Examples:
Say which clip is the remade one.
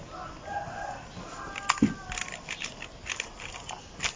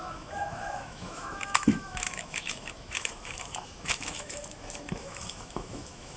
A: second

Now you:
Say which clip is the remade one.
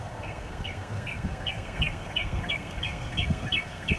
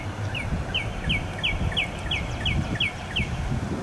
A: first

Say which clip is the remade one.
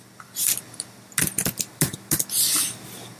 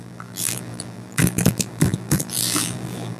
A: second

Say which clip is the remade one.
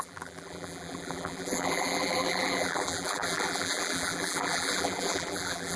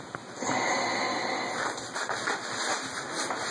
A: first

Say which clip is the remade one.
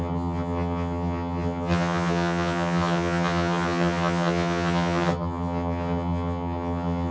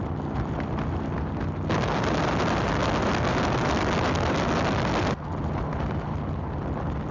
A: first